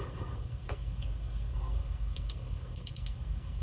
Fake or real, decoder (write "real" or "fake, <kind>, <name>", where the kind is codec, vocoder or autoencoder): fake, codec, SNAC